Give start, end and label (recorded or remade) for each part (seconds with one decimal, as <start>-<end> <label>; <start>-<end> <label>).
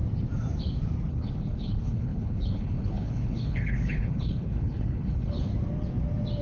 0.0-1.1 recorded; 1.1-5.5 remade; 5.5-6.4 recorded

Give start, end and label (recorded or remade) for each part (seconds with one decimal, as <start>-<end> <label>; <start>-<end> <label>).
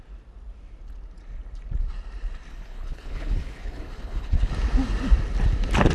0.0-2.5 recorded; 2.5-4.5 remade; 4.5-5.9 recorded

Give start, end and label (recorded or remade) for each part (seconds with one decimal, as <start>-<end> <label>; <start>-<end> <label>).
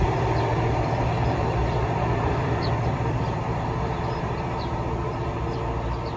0.0-0.5 recorded; 0.5-4.2 remade; 4.2-6.2 recorded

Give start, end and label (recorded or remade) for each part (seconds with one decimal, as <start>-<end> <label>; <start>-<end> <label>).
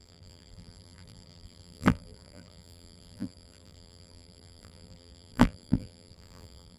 0.0-6.8 remade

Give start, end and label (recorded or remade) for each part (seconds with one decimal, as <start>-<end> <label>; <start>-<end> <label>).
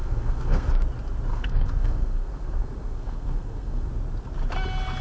0.0-0.7 remade; 0.7-1.3 recorded; 1.3-3.9 remade; 3.9-5.0 recorded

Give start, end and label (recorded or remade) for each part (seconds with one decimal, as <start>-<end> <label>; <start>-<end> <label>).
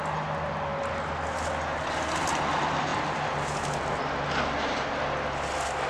0.0-5.9 recorded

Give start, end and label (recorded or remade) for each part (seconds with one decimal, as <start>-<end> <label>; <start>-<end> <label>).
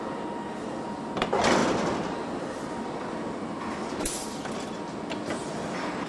0.0-6.1 recorded